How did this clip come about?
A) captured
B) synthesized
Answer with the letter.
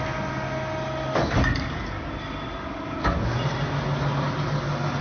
A